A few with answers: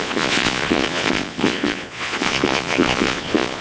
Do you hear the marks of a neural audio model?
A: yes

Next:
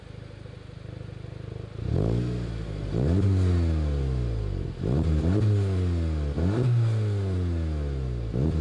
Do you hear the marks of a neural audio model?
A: no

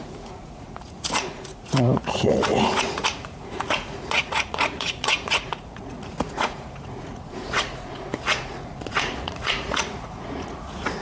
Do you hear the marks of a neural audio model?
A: yes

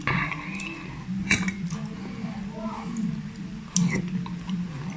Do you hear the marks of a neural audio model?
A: no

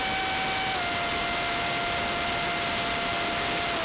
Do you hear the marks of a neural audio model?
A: no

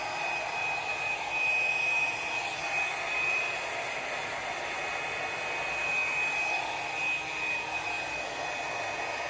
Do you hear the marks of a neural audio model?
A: no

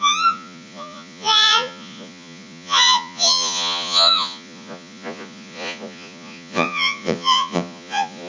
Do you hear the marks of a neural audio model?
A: yes